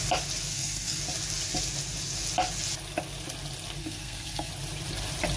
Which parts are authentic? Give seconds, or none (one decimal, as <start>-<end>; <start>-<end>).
0.0-0.5; 1.0-3.8; 4.5-5.4